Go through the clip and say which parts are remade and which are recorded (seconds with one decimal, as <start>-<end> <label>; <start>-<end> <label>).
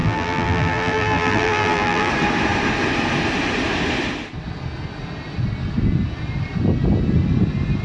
0.0-2.1 remade; 2.1-7.8 recorded